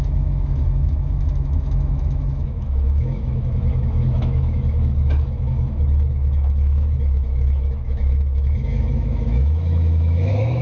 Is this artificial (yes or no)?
yes